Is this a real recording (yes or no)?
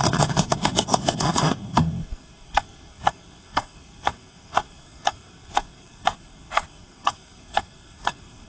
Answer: no